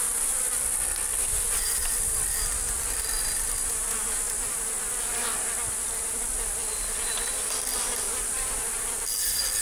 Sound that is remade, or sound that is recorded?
remade